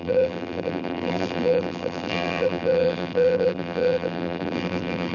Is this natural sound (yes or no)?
no